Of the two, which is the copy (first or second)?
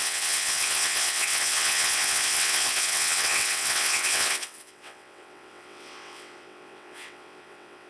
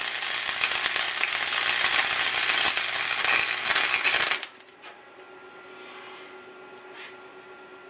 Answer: first